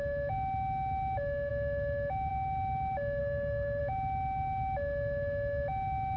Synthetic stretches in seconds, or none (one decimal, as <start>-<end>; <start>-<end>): 3.2-3.8